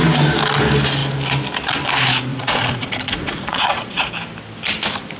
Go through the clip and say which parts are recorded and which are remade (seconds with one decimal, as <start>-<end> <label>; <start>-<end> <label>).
0.0-2.3 recorded; 2.3-4.1 remade; 4.1-5.2 recorded